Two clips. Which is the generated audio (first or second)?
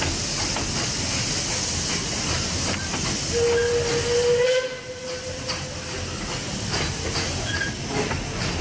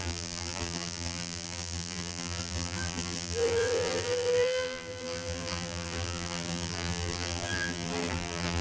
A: second